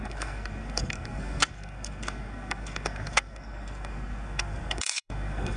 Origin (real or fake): fake